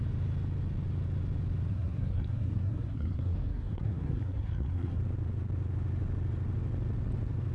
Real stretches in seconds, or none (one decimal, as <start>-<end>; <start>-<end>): 0.0-1.7; 5.0-7.5